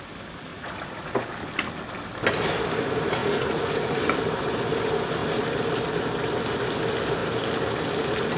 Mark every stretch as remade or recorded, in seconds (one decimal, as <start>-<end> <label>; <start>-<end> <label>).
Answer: 0.0-0.5 recorded; 0.5-1.1 remade; 1.1-3.2 recorded; 3.2-4.0 remade; 4.0-8.4 recorded